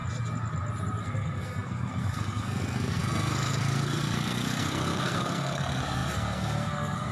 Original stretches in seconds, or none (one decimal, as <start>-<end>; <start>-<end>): 0.0-1.0